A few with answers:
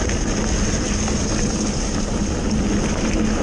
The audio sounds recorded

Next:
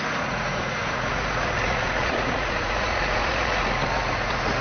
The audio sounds remade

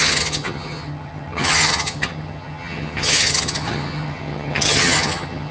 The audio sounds remade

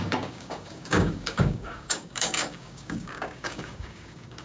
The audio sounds remade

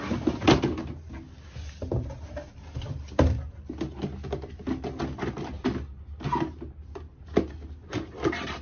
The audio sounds recorded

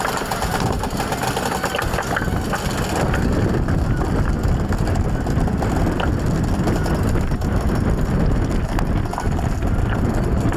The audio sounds recorded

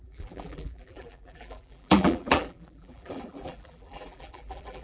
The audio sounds remade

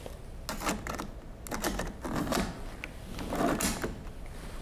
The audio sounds recorded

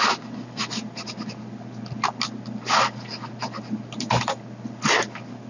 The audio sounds recorded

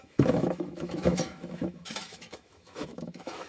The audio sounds remade